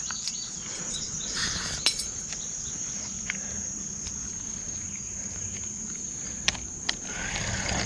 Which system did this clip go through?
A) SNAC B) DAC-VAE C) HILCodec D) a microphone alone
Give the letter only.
D